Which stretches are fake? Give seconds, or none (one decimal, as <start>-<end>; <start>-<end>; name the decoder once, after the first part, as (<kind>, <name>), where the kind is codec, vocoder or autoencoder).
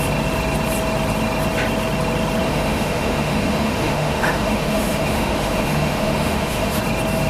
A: 2.4-6.8 (autoencoder, DAC-VAE)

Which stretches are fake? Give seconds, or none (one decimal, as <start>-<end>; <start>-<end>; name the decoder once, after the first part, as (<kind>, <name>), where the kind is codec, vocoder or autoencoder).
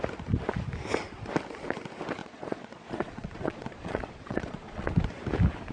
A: 2.2-4.9 (vocoder, Vocos)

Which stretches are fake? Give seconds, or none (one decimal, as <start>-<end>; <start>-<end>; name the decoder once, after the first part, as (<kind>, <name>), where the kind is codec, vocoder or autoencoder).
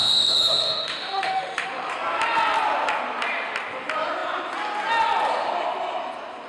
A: 0.0-1.9 (autoencoder, DAC-VAE)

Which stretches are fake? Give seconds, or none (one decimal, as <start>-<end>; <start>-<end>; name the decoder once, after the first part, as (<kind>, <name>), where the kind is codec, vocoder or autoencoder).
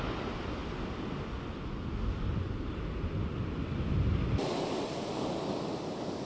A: none